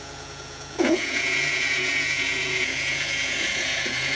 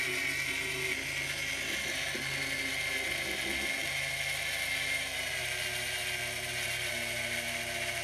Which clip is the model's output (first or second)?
first